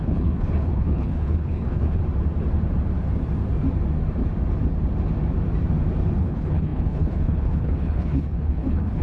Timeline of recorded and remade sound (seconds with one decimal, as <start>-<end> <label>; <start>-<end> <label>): 0.0-2.0 remade; 2.0-6.2 recorded; 6.2-9.0 remade